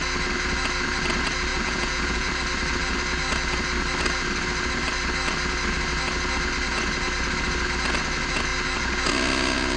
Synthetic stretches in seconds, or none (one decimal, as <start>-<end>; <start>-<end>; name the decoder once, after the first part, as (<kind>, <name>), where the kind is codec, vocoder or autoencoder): 1.5-2.3 (vocoder, Vocos)